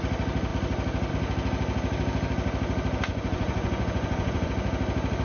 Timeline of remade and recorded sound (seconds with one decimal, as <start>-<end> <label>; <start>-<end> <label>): 0.0-3.1 recorded; 3.1-4.5 remade; 4.5-5.2 recorded